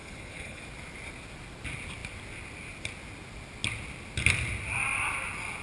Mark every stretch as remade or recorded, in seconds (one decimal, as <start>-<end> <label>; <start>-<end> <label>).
0.0-0.6 remade; 0.6-5.6 recorded